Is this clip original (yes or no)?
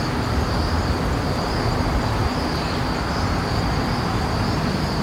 yes